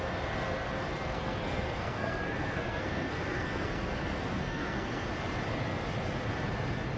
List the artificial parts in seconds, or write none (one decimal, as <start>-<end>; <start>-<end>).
0.9-5.1